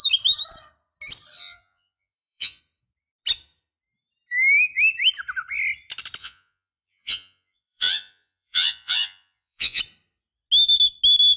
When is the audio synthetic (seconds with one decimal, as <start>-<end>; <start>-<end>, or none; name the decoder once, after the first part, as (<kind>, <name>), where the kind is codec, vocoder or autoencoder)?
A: 1.4-2.6 (vocoder, Vocos); 6.2-9.8